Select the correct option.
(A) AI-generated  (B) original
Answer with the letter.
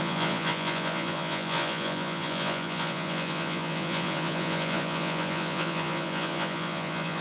A